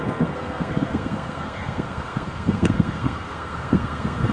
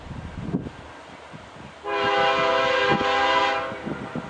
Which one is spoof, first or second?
first